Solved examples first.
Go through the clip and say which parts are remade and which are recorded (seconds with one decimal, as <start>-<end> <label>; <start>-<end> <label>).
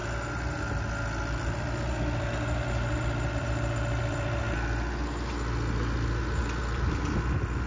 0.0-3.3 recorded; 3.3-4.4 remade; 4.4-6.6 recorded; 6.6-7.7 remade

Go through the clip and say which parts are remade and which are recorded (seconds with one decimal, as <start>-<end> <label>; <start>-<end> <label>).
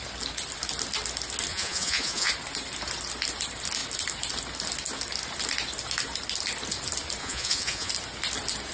0.0-1.5 recorded; 1.5-2.3 remade; 2.3-7.2 recorded; 7.2-7.9 remade; 7.9-8.7 recorded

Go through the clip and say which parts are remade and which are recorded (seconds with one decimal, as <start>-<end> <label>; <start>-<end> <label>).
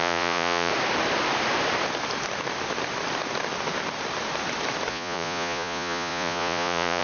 0.0-0.7 remade; 0.7-4.9 recorded; 4.9-7.0 remade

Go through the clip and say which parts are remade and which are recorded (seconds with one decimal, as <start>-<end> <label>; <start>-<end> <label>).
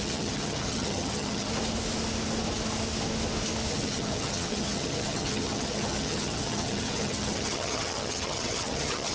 0.0-1.5 remade; 1.5-3.7 recorded; 3.7-9.1 remade